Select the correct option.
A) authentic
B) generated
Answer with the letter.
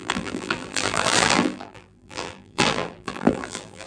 B